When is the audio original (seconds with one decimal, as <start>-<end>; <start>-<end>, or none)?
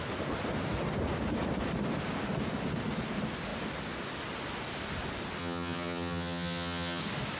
0.0-5.4; 7.0-7.4